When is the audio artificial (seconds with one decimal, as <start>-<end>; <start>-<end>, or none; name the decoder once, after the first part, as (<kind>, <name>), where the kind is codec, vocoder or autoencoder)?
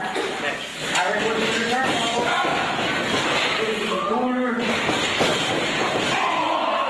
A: none